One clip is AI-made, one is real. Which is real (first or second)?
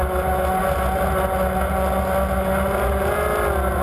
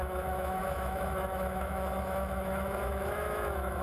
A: first